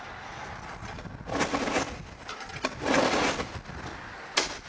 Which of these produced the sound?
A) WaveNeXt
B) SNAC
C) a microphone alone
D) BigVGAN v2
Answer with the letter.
C